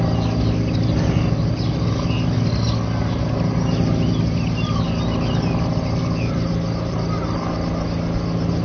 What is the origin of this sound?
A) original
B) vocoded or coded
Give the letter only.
A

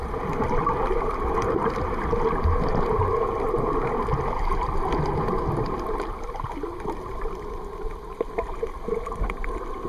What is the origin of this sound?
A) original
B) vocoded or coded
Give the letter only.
A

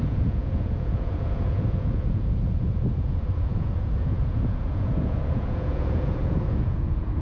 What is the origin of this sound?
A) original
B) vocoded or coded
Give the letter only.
B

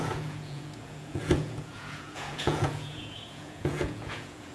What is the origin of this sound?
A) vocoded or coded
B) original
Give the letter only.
A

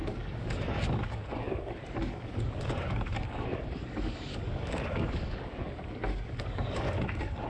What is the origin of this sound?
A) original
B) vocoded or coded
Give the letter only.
B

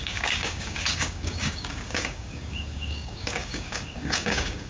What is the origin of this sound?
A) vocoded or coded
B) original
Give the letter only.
A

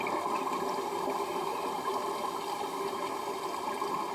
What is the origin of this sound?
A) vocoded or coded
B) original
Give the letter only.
B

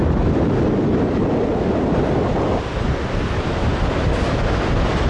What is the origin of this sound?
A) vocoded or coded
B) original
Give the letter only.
B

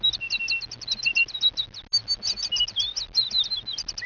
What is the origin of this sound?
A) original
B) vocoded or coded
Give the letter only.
A